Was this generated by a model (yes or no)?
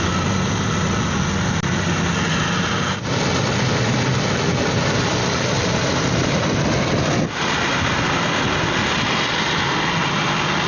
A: no